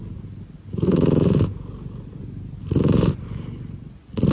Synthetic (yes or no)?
no